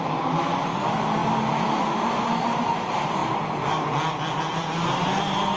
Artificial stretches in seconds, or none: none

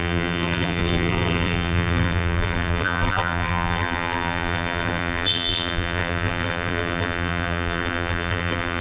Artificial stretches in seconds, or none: 0.0-8.8 (vocoder, BigVGAN v2)

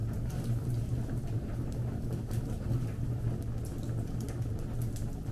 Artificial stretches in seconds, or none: 0.0-3.2 (vocoder, BigVGAN v2)

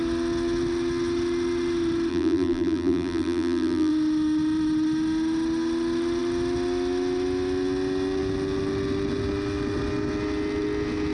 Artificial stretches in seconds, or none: 2.1-3.9 (vocoder, BigVGAN v2)

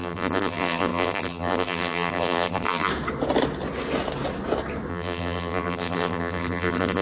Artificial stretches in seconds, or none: 0.0-2.9 (vocoder, BigVGAN v2); 4.9-7.0

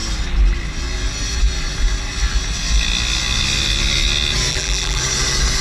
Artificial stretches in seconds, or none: 4.5-5.0 (vocoder, BigVGAN v2)

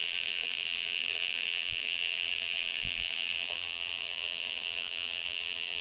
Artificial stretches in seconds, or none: 0.0-5.8 (vocoder, BigVGAN v2)

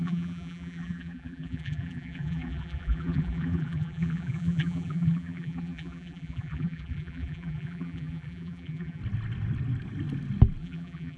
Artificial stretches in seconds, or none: 0.0-9.0 (vocoder, BigVGAN v2); 10.6-11.2